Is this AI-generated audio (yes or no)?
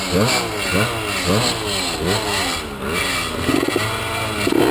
no